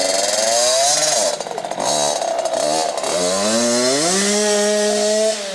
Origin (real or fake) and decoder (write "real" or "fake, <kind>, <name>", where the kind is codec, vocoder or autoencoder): real